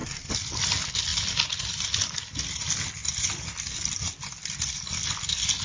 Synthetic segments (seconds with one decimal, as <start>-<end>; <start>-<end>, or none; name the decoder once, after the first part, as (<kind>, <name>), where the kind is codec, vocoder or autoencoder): 1.1-1.7 (vocoder, BigVGAN v2); 3.0-5.6